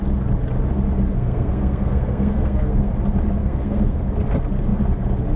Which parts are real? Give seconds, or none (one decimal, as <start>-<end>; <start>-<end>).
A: 0.0-1.1; 2.9-3.4; 4.0-5.4